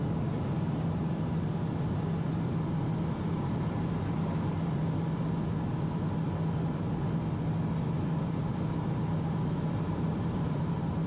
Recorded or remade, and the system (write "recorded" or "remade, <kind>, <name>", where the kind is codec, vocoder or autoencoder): recorded